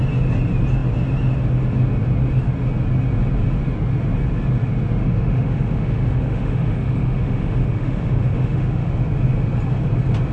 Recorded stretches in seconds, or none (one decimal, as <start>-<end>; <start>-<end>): 0.0-5.0; 8.9-10.3